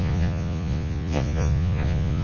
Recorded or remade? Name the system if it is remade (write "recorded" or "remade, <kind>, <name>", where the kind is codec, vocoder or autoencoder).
remade, vocoder, Vocos